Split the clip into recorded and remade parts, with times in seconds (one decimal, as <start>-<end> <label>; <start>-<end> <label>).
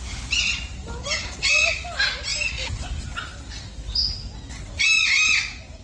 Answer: 0.0-5.8 recorded